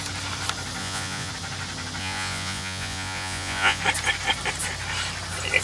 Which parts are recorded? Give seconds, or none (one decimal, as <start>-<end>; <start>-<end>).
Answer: 0.0-0.8; 1.3-2.0; 3.8-5.6